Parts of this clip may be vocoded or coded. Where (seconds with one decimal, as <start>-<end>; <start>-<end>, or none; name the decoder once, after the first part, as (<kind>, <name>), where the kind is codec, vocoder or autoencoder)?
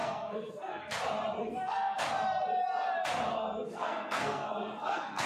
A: 0.0-0.8 (codec, SNAC); 1.4-2.0; 3.3-5.3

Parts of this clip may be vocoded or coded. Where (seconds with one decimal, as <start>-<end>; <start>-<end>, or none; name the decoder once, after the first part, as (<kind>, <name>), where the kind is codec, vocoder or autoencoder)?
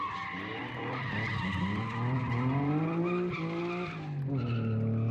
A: 0.5-3.6 (vocoder, BigVGAN v2)